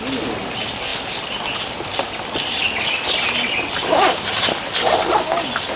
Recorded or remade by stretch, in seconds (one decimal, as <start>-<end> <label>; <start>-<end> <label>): 0.0-5.8 recorded